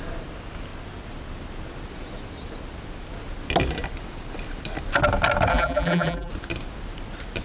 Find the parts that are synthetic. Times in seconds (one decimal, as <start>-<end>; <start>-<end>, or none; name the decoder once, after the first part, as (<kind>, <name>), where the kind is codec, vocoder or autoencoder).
5.5-6.3 (vocoder, BigVGAN v2)